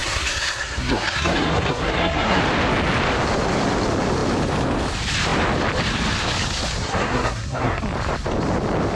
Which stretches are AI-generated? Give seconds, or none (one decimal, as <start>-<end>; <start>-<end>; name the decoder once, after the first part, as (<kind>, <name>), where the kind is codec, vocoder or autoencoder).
0.0-2.4 (codec, SNAC); 6.8-7.8